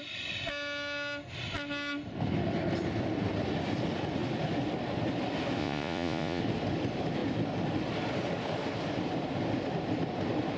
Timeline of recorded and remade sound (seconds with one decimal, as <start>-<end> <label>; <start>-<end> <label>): 0.0-5.6 recorded; 5.6-6.4 remade; 6.4-10.6 recorded